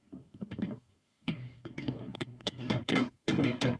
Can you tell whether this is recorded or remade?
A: remade